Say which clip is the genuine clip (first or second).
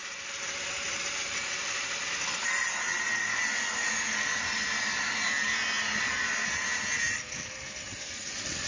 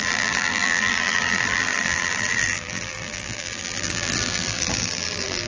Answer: first